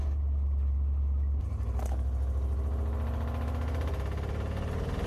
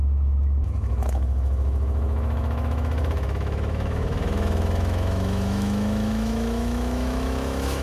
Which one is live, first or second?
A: first